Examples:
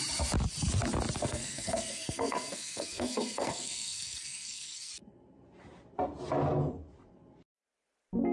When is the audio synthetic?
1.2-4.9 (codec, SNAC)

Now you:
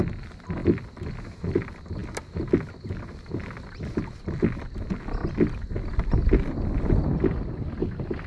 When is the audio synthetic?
none

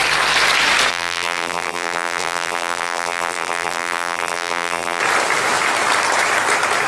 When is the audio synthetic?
0.9-5.0 (vocoder, BigVGAN v2)

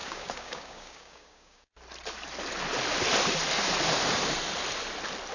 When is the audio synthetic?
0.0-1.7 (codec, DAC)

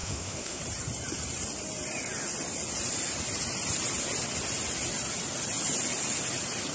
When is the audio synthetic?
0.0-0.6 (autoencoder, DAC-VAE)

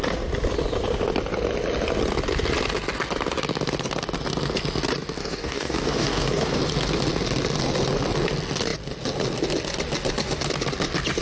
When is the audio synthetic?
5.2-6.6 (codec, DAC)

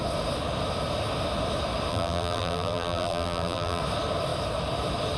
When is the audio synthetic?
1.9-3.8 (vocoder, BigVGAN v2)

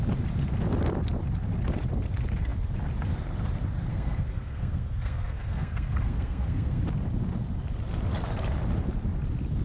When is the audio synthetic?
3.9-6.8 (codec, SNAC)